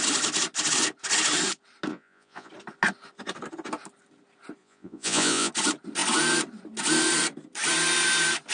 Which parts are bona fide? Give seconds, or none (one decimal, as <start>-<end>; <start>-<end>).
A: 0.0-1.9; 2.5-4.6; 5.5-8.5